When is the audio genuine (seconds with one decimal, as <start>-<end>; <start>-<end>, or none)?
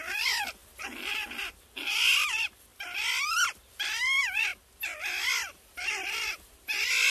0.6-2.2; 2.7-3.3; 4.5-5.0